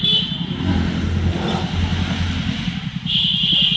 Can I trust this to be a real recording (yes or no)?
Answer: yes